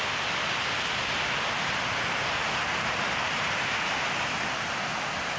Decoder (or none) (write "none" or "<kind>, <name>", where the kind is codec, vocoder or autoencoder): none